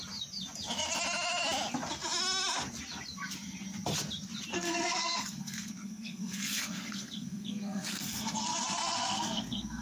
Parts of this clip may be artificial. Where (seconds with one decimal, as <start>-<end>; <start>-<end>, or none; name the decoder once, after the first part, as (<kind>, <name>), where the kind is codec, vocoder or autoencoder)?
4.5-9.8 (codec, SNAC)